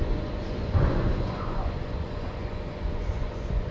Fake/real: fake